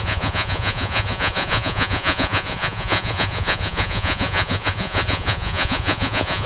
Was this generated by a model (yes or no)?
yes